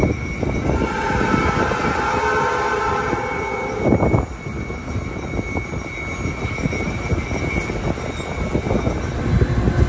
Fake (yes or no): no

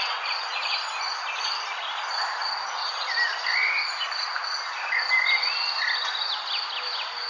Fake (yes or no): no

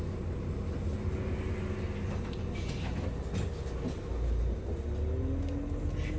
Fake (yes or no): no